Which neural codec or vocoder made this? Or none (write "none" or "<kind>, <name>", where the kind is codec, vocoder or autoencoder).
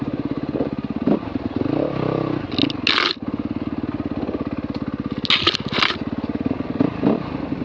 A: none